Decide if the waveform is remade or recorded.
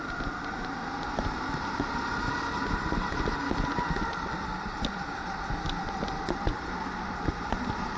recorded